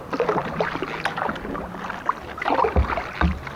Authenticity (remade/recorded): recorded